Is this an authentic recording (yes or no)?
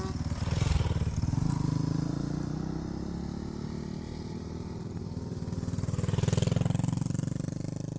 yes